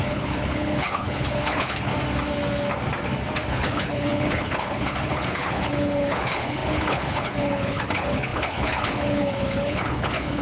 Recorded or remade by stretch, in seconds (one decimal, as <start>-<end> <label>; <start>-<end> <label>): 0.0-1.9 remade; 1.9-3.5 recorded; 3.5-10.4 remade